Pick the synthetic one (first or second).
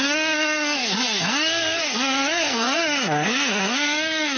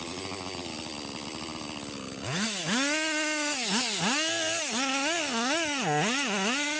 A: first